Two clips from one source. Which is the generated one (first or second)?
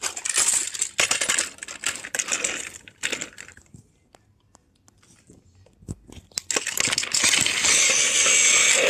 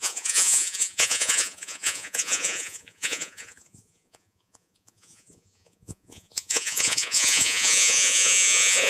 second